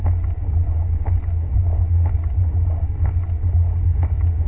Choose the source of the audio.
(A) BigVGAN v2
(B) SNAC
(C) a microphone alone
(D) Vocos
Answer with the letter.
C